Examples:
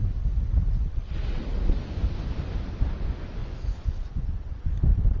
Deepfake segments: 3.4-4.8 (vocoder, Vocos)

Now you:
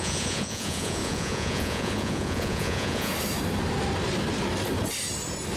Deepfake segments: 0.0-3.1 (vocoder, Vocos)

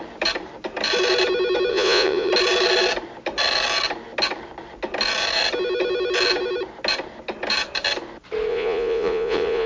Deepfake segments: 1.7-2.3 (vocoder, Vocos); 8.5-9.7

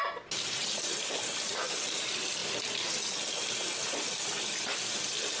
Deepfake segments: none

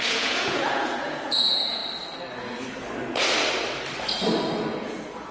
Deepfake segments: 0.0-1.8 (vocoder, Vocos); 4.7-5.3